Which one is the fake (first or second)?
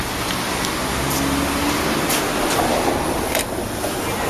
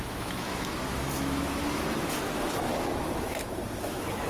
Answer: second